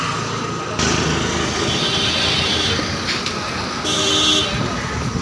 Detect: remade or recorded recorded